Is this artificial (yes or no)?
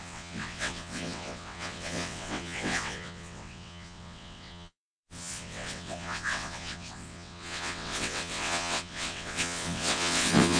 yes